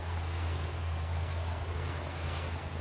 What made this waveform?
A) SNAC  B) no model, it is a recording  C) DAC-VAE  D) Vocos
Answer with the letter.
A